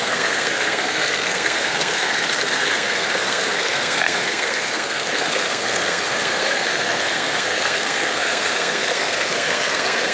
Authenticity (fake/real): fake